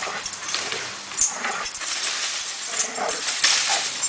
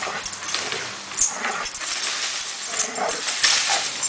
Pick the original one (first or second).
second